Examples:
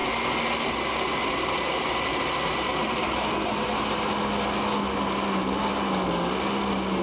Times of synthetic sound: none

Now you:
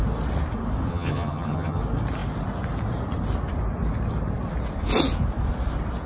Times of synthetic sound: 0.9-1.8

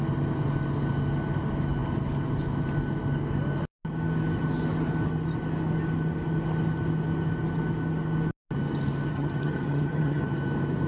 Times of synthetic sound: 9.1-10.2

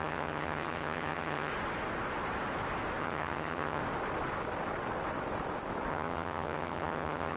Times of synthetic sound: 0.0-1.5; 3.0-3.8; 5.9-7.4

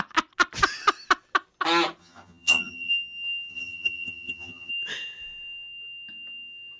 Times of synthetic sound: 2.0-2.9; 3.5-4.7